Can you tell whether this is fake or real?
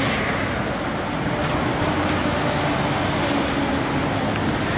real